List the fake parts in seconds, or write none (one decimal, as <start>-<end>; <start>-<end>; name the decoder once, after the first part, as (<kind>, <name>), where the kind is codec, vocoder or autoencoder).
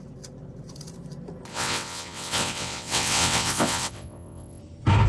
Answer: 1.5-4.6 (vocoder, WaveNeXt)